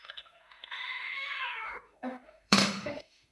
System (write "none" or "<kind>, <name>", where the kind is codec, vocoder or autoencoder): autoencoder, DAC-VAE